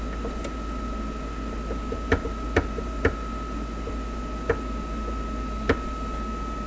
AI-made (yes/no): no